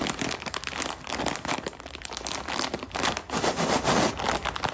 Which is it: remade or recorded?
recorded